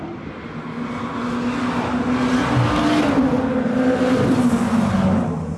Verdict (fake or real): real